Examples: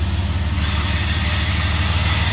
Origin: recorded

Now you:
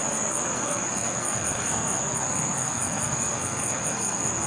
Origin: remade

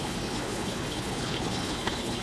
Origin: remade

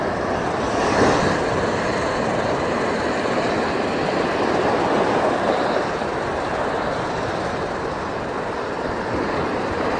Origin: recorded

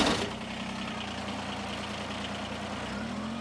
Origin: recorded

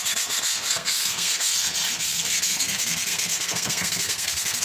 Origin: remade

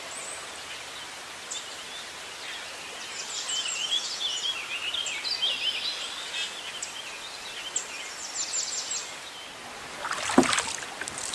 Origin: recorded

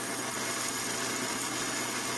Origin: recorded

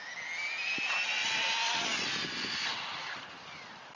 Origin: recorded